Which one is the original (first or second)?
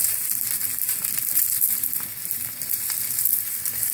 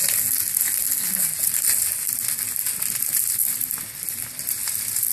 second